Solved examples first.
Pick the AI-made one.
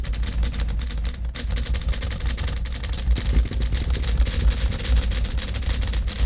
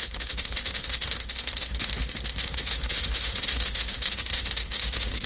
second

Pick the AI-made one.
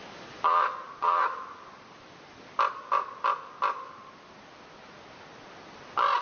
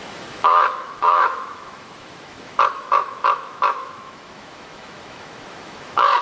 second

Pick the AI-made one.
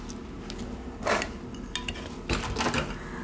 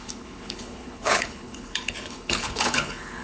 second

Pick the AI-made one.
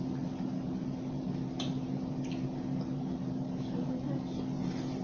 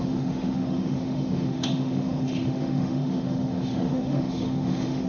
second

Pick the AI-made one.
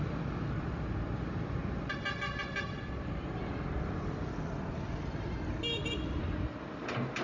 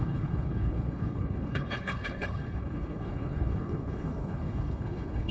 second